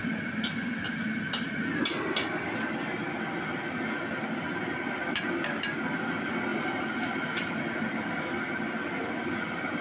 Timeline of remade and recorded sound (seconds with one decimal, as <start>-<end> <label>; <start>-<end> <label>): 0.0-6.5 recorded; 6.5-8.1 remade; 8.1-9.8 recorded